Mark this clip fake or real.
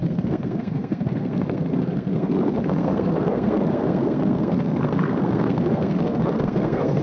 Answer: fake